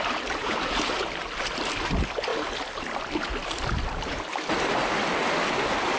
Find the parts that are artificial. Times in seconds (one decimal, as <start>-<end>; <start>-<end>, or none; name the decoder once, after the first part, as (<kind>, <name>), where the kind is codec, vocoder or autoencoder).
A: 0.4-1.1 (vocoder, Vocos)